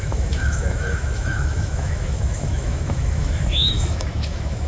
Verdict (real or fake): fake